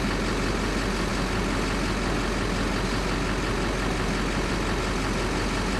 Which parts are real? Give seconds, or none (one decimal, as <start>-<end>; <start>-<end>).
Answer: 0.0-5.8